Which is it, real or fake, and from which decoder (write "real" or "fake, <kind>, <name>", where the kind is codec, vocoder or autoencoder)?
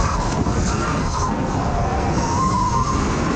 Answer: fake, codec, SNAC